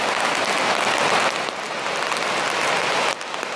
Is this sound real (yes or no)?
yes